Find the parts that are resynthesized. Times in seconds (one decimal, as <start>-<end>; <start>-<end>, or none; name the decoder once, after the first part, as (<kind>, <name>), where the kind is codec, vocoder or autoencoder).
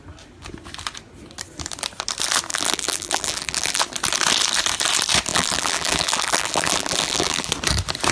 2.5-3.8 (vocoder, BigVGAN v2); 5.3-7.5